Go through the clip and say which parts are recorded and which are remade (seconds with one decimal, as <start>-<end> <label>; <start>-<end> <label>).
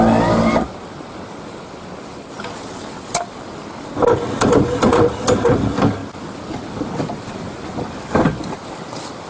0.0-9.3 recorded